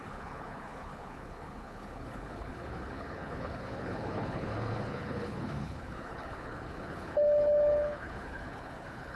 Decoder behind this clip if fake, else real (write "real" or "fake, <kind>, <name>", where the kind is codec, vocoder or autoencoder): fake, codec, HILCodec